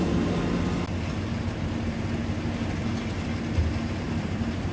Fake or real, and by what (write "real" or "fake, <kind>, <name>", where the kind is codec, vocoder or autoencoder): real